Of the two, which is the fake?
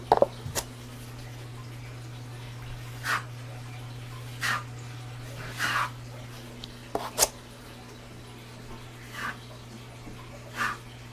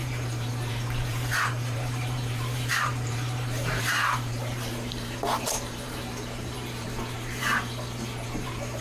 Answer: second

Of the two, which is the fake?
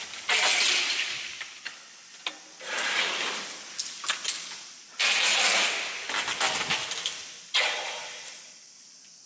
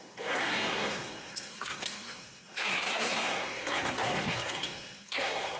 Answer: second